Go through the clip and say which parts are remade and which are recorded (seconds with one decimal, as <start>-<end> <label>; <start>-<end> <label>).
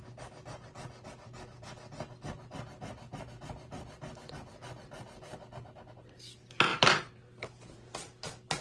0.0-6.7 recorded; 6.7-7.6 remade; 7.6-8.6 recorded